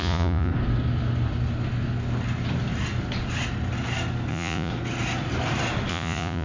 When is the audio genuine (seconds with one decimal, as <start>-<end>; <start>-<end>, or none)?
0.5-4.3; 4.7-5.9